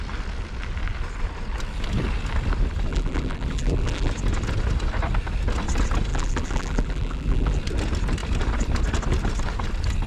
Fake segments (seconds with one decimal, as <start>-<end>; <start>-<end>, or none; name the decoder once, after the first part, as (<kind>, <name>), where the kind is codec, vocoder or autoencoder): 2.9-4.1 (vocoder, BigVGAN v2); 6.1-7.6